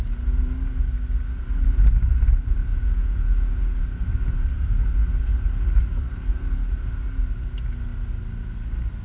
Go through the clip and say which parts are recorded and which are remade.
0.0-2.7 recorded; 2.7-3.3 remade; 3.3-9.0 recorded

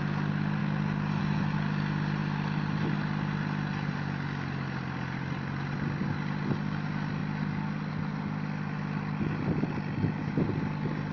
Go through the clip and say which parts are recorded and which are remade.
0.0-11.1 recorded

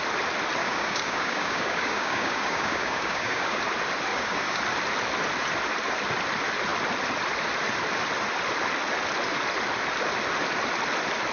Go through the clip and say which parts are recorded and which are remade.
0.0-0.6 recorded; 0.6-3.6 remade; 3.6-4.1 recorded; 4.1-4.6 remade; 4.6-11.3 recorded

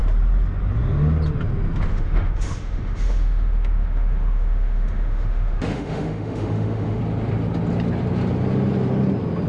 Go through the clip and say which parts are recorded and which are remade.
0.0-1.9 recorded; 1.9-7.0 remade; 7.0-9.5 recorded